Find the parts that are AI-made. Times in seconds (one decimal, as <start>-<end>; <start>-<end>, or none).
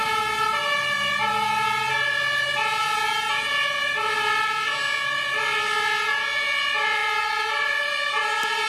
none